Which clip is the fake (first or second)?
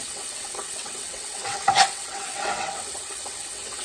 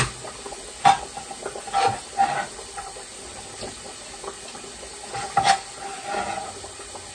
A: first